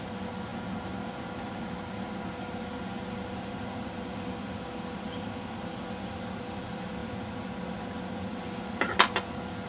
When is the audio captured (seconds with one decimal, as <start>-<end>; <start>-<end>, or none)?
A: 0.0-9.7